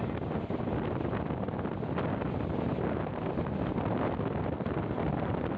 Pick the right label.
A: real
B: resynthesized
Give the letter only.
A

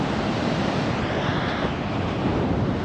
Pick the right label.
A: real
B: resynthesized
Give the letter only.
A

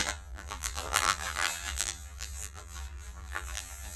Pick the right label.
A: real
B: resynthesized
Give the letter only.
B